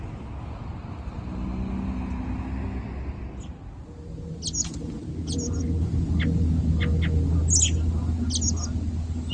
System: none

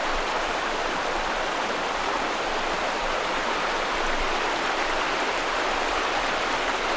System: vocoder, BigVGAN v2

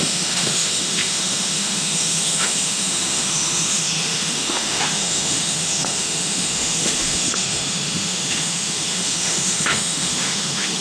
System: autoencoder, DAC-VAE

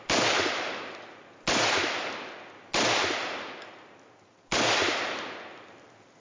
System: none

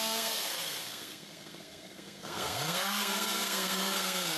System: codec, SNAC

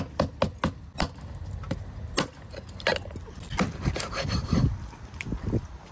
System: none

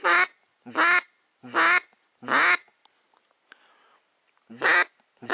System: none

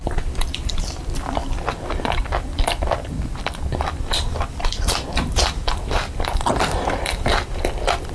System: vocoder, BigVGAN v2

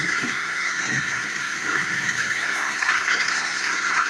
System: codec, SNAC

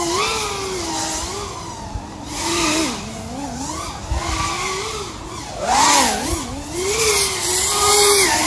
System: none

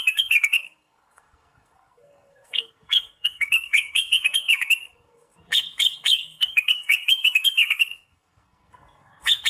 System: codec, SNAC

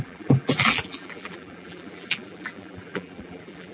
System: vocoder, BigVGAN v2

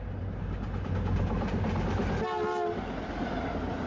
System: none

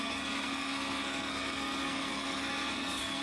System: codec, SNAC